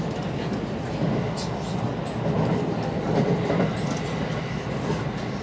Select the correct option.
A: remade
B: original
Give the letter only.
B